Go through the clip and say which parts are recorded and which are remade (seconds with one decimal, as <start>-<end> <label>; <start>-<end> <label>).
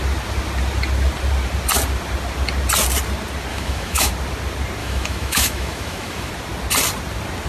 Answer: 0.0-3.5 recorded; 3.5-4.1 remade; 4.1-4.8 recorded; 4.8-6.3 remade; 6.3-7.5 recorded